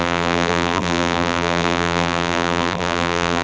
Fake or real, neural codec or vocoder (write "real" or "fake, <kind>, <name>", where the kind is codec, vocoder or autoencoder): fake, vocoder, BigVGAN v2